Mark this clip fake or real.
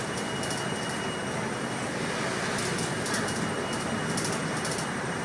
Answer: real